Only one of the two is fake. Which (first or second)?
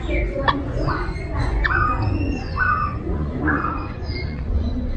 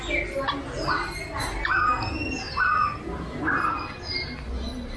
first